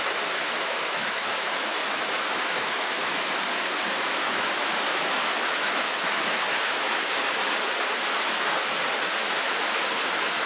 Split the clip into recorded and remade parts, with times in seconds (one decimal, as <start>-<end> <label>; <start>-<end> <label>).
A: 0.0-7.4 remade; 7.4-9.9 recorded; 9.9-10.5 remade